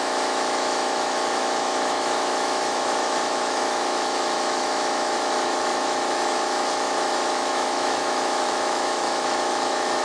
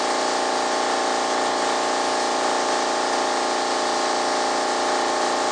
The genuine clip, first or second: second